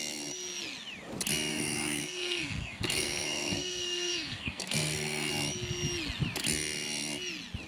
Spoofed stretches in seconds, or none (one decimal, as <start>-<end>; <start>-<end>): 1.5-5.3